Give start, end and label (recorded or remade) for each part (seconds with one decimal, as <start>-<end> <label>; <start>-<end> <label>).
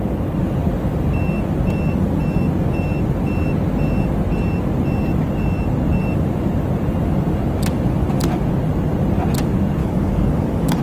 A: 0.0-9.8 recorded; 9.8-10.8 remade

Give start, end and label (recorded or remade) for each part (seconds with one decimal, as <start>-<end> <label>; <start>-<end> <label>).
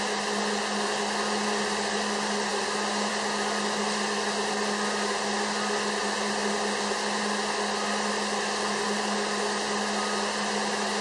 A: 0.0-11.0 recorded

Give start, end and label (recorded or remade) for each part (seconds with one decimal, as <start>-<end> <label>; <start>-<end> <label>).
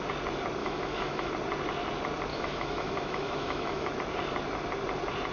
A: 0.0-0.6 recorded; 0.6-1.3 remade; 1.3-2.3 recorded; 2.3-3.9 remade; 3.9-5.3 recorded